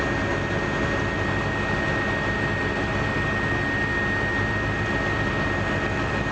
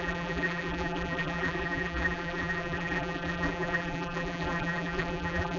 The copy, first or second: second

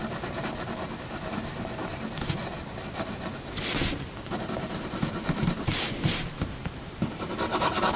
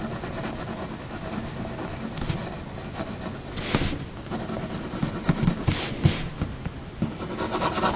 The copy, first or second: first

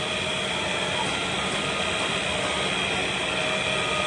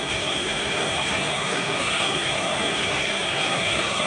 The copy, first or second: second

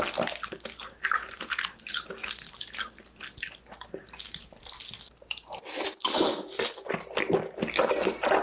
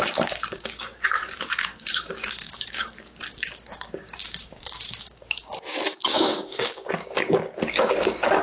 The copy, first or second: second